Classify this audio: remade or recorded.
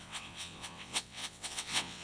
remade